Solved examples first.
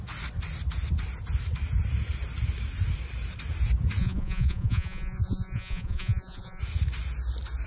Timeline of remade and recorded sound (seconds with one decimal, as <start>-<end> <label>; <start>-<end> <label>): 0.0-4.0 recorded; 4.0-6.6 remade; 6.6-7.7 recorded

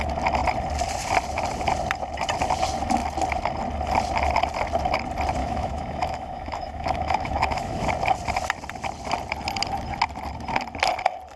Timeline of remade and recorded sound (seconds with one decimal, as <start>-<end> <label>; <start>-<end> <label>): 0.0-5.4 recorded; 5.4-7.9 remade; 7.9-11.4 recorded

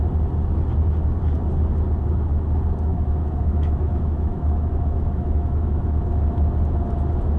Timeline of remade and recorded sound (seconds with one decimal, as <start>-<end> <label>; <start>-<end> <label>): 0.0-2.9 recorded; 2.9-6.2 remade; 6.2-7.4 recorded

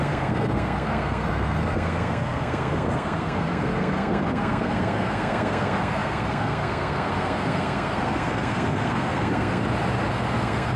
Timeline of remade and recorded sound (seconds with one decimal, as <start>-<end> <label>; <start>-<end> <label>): 0.0-9.6 remade; 9.6-10.1 recorded; 10.1-10.8 remade